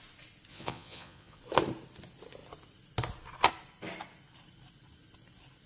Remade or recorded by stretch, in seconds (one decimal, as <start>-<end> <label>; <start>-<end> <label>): 0.0-0.5 recorded; 0.5-1.4 remade; 1.4-5.7 recorded